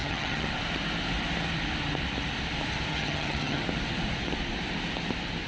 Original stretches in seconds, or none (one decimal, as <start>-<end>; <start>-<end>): 0.5-2.9; 3.6-5.5